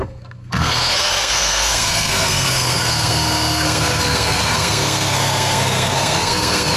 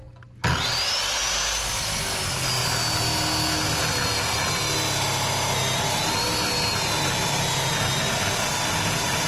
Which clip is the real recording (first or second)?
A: second